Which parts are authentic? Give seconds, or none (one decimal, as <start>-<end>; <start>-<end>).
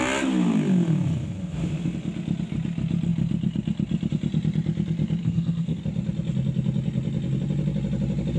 0.0-5.2; 5.8-8.4